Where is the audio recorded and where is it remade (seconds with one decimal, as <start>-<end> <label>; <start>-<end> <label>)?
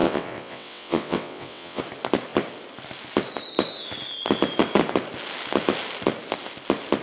0.0-1.8 remade; 1.8-7.0 recorded